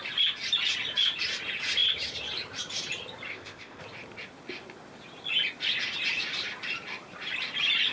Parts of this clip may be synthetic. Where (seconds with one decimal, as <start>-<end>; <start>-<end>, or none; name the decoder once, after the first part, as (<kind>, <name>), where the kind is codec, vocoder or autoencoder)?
3.3-3.8 (codec, ZipCodec)